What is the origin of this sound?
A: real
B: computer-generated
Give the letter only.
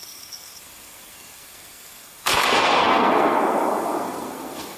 B